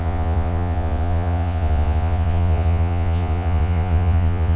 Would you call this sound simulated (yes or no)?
yes